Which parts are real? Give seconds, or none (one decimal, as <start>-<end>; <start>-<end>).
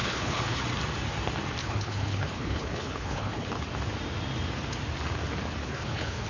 0.6-1.6; 3.6-5.6